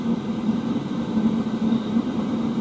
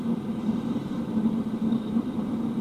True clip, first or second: first